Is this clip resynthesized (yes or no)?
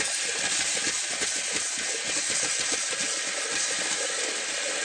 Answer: no